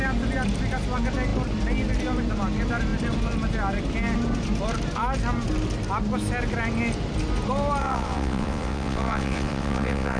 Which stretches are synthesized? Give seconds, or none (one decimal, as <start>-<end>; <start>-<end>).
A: 7.8-10.2